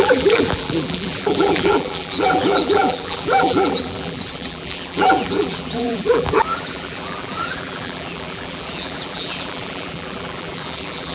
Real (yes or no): no